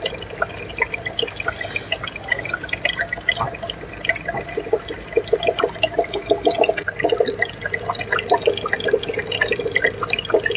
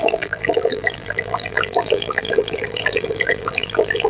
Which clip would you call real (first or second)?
first